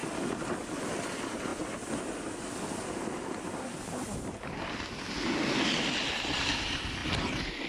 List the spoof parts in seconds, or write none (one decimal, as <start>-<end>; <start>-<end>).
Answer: none